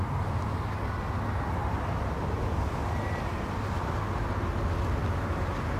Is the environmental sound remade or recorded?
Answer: recorded